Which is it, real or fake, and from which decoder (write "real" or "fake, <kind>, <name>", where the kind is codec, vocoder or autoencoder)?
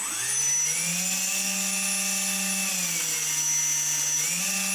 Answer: real